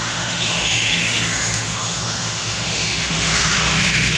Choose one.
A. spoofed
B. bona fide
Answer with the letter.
A